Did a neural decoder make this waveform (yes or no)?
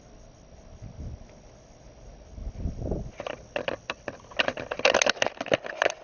no